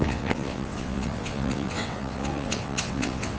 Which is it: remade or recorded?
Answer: remade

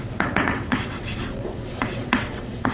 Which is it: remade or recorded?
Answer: remade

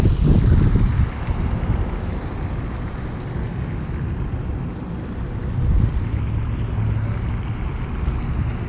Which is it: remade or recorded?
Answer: recorded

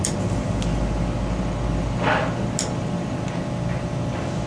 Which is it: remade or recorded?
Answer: recorded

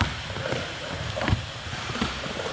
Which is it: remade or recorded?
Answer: recorded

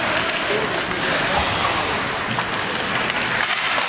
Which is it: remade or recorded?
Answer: recorded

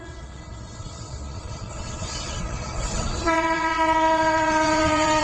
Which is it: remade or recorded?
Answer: remade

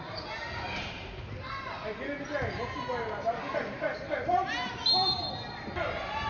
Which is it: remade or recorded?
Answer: recorded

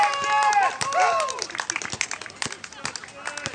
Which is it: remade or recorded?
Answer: recorded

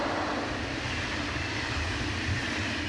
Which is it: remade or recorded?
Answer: recorded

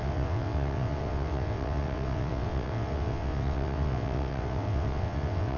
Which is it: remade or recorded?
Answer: remade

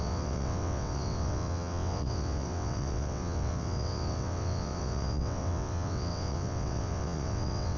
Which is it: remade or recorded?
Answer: remade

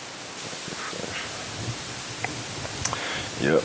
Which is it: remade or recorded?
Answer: recorded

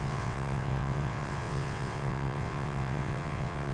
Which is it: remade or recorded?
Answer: remade